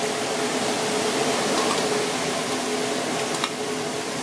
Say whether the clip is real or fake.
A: real